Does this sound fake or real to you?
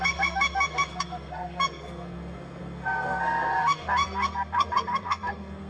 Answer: fake